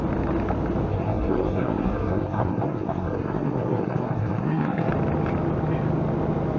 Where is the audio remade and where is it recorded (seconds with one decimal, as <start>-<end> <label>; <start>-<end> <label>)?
0.0-0.9 recorded; 0.9-4.9 remade; 4.9-6.6 recorded